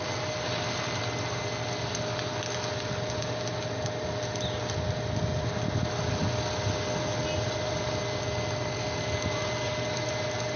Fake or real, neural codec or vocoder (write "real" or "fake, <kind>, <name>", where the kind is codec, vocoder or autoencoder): real